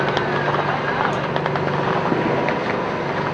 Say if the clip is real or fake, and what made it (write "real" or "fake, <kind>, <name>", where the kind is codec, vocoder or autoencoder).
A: real